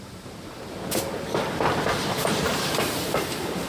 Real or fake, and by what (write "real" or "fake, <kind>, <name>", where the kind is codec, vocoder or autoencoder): real